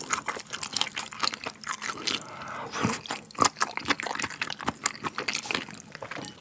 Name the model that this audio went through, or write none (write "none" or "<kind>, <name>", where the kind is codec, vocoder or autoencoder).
none